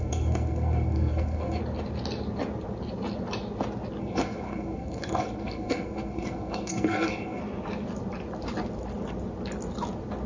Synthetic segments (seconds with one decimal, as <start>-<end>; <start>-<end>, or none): 0.0-1.6; 4.0-7.4